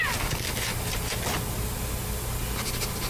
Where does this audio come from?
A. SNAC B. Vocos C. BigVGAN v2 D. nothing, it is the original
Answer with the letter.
D